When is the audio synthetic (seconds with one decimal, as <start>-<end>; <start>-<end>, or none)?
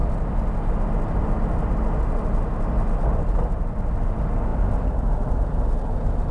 none